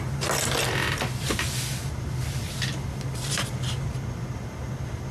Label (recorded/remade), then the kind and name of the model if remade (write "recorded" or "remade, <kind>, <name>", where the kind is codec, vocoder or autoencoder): recorded